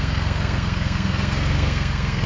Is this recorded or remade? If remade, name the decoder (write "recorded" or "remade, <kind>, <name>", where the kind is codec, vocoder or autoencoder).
remade, codec, SNAC